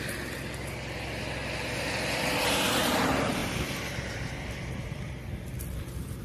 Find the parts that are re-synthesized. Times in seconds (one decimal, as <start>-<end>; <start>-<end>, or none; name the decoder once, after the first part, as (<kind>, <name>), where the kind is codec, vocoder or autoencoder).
none

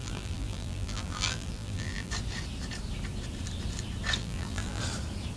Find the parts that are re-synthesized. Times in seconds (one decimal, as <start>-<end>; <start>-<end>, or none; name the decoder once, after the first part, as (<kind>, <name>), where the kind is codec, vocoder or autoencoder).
0.0-2.1 (vocoder, BigVGAN v2); 4.2-4.8